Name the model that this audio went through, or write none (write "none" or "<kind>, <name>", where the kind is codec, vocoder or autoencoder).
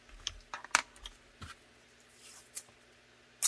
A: none